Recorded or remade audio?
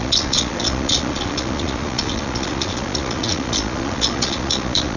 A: remade